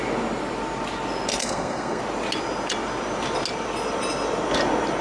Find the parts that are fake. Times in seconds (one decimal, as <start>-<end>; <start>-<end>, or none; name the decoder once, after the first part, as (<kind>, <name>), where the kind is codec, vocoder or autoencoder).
1.4-2.0 (codec, SNAC)